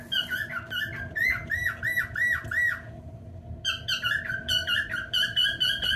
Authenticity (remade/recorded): recorded